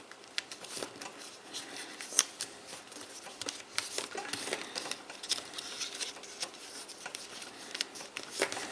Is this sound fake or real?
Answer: real